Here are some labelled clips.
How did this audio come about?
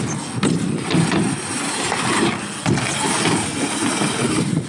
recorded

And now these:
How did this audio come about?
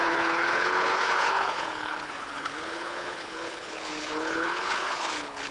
remade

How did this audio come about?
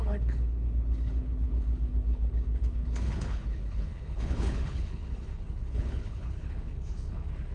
remade